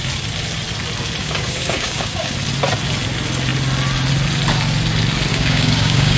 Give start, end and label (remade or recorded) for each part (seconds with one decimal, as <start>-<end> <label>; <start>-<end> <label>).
0.0-1.2 recorded; 1.2-2.3 remade; 2.3-5.3 recorded; 5.3-6.2 remade